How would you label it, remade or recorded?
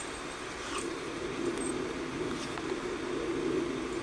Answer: recorded